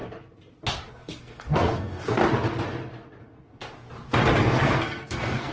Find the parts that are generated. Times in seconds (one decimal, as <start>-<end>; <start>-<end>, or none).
0.9-2.2; 3.2-3.6; 4.4-5.5